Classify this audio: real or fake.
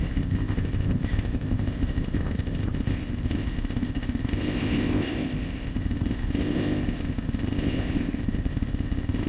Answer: fake